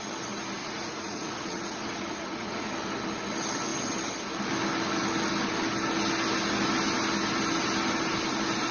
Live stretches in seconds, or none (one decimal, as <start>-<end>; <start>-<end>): 0.0-0.6; 2.7-8.7